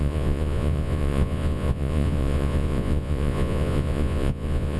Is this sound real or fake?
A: fake